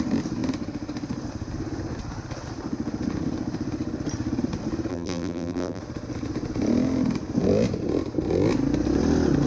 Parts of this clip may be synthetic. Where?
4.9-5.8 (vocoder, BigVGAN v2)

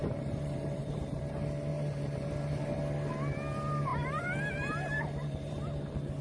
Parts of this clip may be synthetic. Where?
0.0-1.2 (vocoder, BigVGAN v2); 1.7-2.6; 3.9-5.6

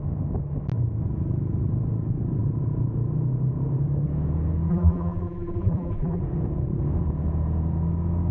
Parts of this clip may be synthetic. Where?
4.7-6.2 (vocoder, BigVGAN v2)

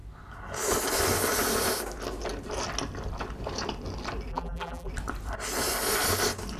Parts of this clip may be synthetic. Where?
4.3-4.9 (vocoder, BigVGAN v2)